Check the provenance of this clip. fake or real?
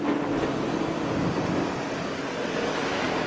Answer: real